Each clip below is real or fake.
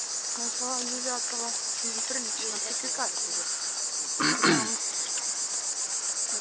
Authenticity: real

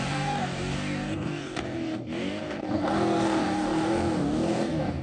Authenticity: fake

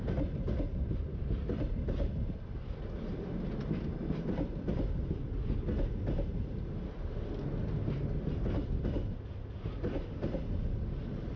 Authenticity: real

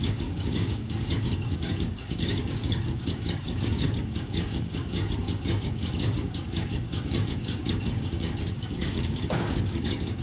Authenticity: fake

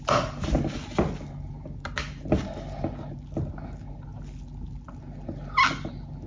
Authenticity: real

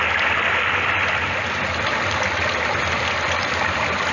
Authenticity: real